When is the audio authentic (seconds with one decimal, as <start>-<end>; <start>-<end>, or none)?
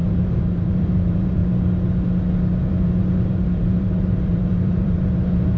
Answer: 1.4-2.7